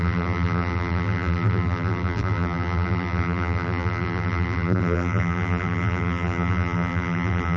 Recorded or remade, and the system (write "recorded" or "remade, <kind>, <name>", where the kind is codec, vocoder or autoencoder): remade, vocoder, BigVGAN v2